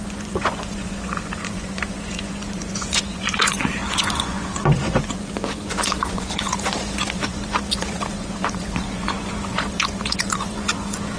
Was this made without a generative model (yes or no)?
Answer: no